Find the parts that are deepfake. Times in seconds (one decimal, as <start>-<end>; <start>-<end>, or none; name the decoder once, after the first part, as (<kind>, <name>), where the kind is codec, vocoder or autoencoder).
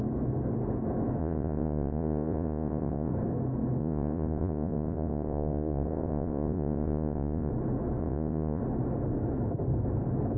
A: 1.2-3.1 (vocoder, Vocos); 3.8-7.5; 8.0-8.6